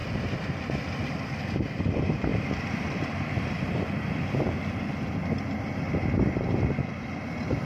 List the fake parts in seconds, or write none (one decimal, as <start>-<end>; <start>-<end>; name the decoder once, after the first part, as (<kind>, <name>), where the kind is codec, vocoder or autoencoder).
0.0-7.7 (vocoder, BigVGAN v2)